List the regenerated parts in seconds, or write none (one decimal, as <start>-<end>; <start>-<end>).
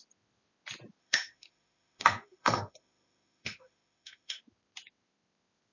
1.0-4.4